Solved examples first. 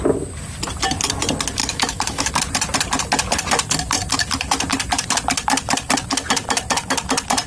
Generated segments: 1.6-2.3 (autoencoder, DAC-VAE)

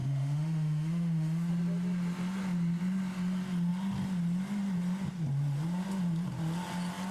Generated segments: 0.0-1.5 (autoencoder, DAC-VAE)

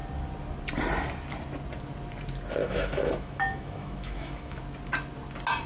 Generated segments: 2.6-4.6 (autoencoder, DAC-VAE)

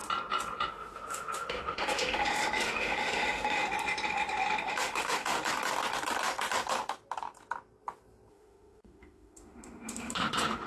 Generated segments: 0.7-3.6 (autoencoder, DAC-VAE); 4.7-5.4; 8.3-10.7

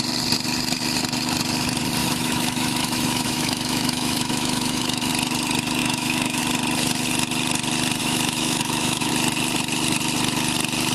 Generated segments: 2.0-5.1 (autoencoder, DAC-VAE); 5.8-6.4; 8.0-9.1

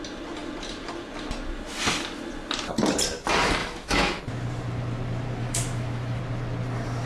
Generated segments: 3.6-4.2 (autoencoder, DAC-VAE); 5.4-6.2